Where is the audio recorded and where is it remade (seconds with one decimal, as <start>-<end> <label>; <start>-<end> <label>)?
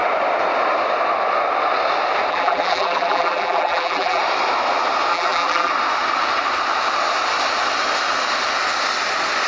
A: 0.0-2.3 recorded; 2.3-4.2 remade; 4.2-5.1 recorded; 5.1-5.7 remade; 5.7-9.5 recorded